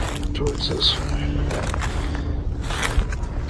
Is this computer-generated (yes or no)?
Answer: no